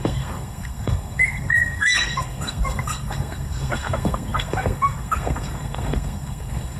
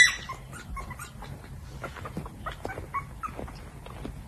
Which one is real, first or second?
second